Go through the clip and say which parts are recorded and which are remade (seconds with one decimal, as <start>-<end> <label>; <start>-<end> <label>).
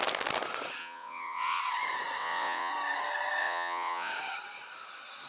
0.0-0.8 recorded; 0.8-1.6 remade; 1.6-2.2 recorded; 2.2-2.7 remade; 2.7-3.4 recorded; 3.4-4.1 remade; 4.1-5.3 recorded